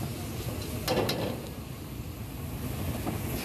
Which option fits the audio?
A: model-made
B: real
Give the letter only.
B